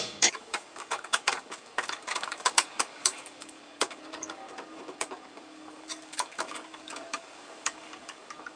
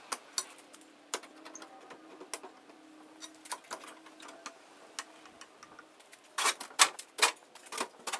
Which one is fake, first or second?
first